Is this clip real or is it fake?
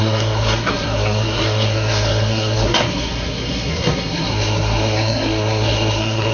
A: fake